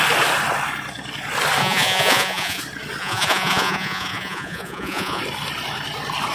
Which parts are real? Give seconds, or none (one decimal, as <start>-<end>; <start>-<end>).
0.0-1.6; 2.6-3.0; 5.2-6.3